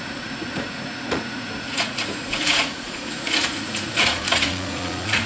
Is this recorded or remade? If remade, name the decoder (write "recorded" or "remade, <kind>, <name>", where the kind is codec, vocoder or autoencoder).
remade, vocoder, Vocos